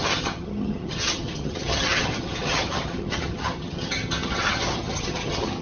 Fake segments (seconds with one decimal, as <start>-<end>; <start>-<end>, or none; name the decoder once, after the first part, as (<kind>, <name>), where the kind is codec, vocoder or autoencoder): 0.0-5.6 (vocoder, HiFi-GAN)

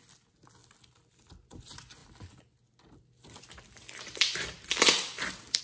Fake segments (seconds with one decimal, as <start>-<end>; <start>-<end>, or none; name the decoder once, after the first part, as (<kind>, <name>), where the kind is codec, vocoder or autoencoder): none